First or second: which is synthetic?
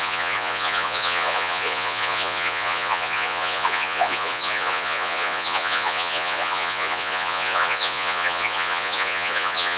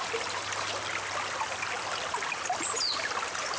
first